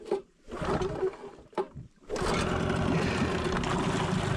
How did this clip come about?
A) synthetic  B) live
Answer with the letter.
B